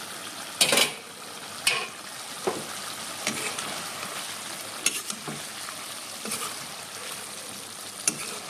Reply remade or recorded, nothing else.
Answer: recorded